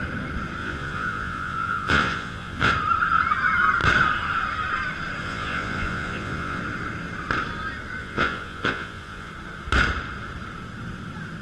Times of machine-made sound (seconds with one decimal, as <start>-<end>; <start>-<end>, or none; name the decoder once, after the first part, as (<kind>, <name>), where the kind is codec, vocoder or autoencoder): 0.6-2.7 (vocoder, Vocos); 5.2-6.6; 8.0-9.3